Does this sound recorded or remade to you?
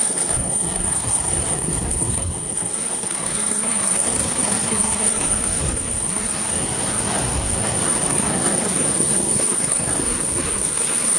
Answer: remade